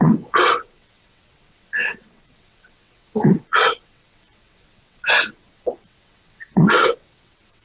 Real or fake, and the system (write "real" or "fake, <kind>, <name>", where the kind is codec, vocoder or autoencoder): fake, vocoder, WaveNeXt